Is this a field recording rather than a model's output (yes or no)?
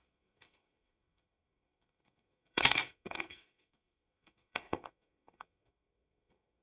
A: no